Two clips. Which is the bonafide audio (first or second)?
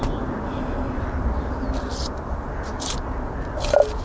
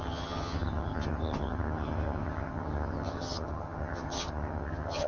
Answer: first